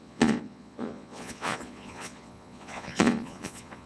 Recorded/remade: remade